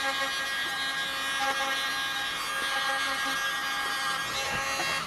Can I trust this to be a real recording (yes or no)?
yes